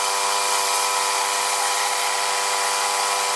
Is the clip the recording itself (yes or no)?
yes